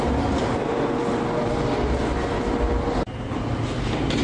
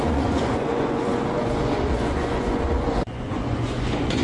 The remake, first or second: second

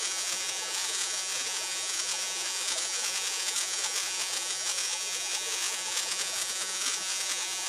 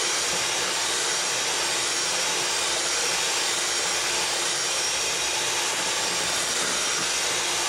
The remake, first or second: first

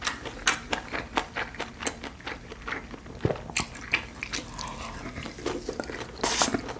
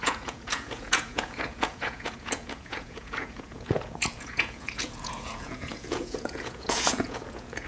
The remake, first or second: second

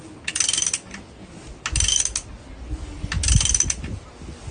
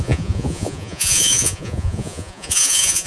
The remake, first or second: second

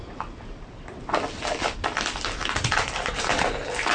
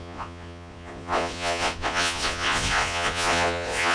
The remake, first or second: second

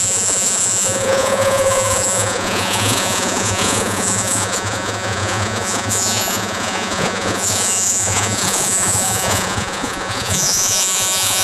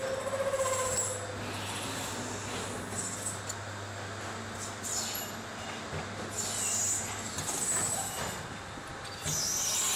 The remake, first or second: first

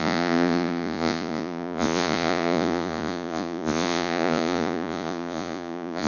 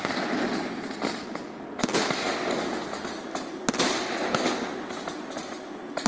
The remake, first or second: first